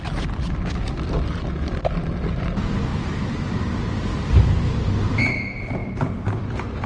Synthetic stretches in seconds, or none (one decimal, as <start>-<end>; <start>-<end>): 2.9-4.4; 5.8-6.9